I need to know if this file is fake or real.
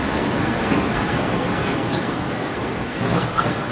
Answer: fake